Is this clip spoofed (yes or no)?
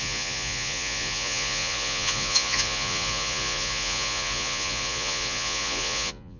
yes